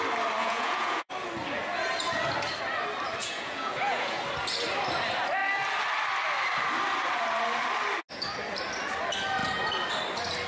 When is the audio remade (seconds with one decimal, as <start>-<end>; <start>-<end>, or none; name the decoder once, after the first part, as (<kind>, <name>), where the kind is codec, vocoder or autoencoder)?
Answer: 0.4-1.1 (vocoder, Vocos); 3.2-4.2